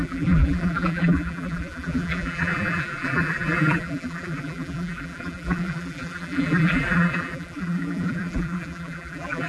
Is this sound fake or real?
fake